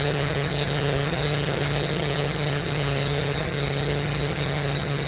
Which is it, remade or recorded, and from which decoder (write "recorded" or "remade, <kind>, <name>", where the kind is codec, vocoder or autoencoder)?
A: remade, vocoder, HiFi-GAN